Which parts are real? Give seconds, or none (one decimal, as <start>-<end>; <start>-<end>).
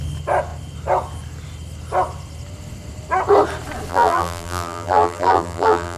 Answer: 0.0-3.9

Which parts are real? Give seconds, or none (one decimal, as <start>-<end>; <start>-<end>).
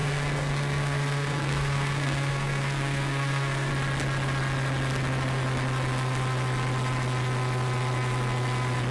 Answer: 3.7-8.9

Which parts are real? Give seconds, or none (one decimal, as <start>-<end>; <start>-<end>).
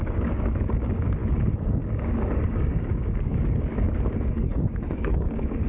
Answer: 1.2-1.7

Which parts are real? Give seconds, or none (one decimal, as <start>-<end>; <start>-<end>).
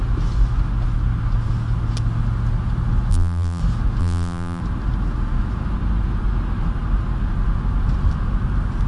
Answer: 0.0-3.1; 3.6-4.0; 4.6-8.9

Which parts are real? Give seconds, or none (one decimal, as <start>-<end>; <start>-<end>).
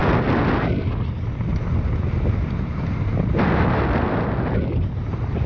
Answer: 0.0-5.5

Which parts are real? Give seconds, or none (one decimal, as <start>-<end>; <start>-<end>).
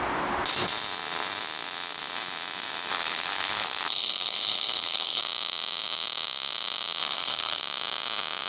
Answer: 0.0-2.9; 5.2-7.0; 7.6-8.5